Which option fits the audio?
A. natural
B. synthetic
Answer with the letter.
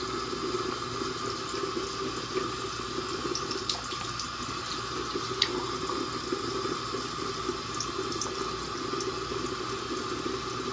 A